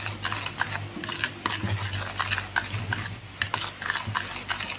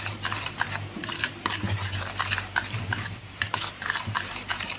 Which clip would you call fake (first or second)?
second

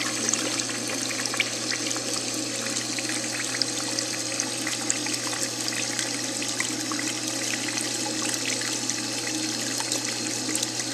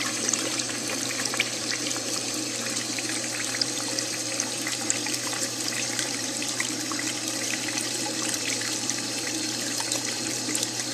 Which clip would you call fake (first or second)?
second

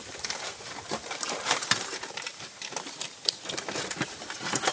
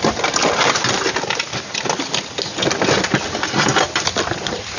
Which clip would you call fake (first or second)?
first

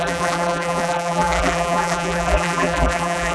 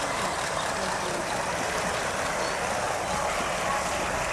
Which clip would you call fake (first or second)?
first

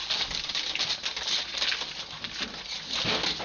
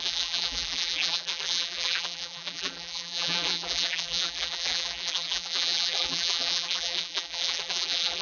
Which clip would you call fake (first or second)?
second